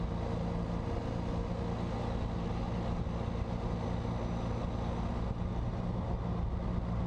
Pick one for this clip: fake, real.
real